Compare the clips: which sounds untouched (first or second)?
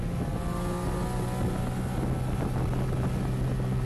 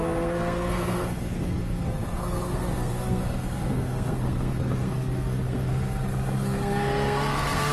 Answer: first